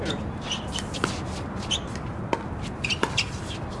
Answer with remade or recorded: recorded